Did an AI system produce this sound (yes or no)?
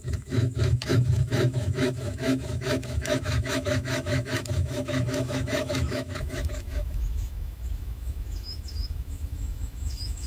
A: yes